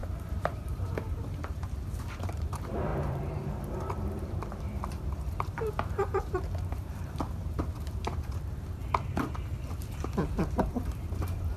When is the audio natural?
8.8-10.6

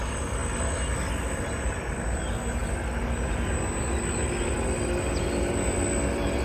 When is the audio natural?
0.0-6.4

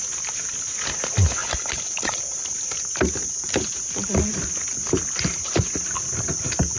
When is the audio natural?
0.0-1.4; 2.5-3.2; 4.4-6.8

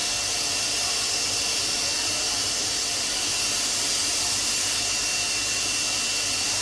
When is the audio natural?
0.0-2.4

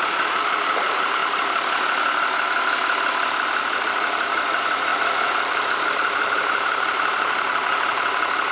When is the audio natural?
1.2-3.8; 4.9-5.7

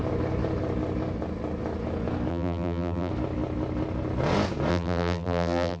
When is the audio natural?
0.0-2.3; 3.1-4.7